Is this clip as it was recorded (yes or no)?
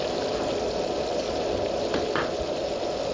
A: yes